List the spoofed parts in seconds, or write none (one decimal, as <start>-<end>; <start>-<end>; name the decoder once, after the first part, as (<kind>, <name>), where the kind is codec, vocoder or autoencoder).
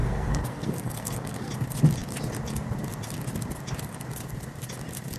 0.0-1.5 (codec, SNAC)